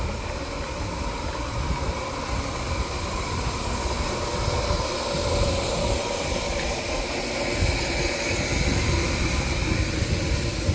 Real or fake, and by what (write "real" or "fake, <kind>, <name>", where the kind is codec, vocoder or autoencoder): real